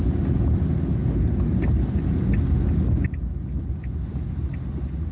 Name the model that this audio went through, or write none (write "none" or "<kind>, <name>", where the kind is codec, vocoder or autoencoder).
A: none